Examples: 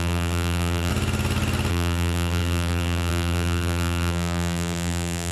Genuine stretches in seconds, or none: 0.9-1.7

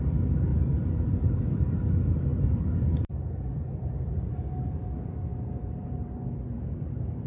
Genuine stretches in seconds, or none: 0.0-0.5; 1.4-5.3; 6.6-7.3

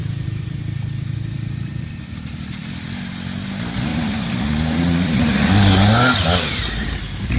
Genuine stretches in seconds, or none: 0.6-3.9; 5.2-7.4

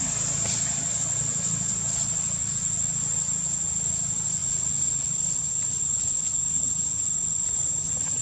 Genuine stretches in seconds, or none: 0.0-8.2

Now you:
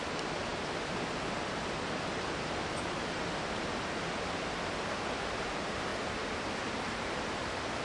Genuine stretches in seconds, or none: 0.0-5.9; 6.4-7.8